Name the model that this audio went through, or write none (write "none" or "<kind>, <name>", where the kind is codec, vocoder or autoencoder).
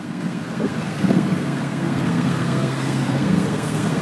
codec, SNAC